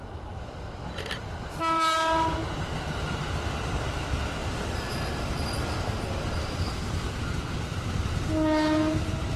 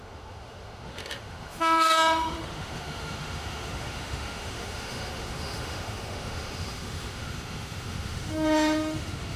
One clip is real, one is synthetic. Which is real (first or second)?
first